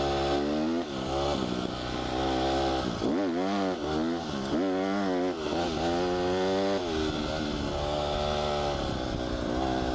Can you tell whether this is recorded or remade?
recorded